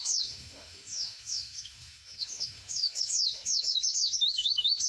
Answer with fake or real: fake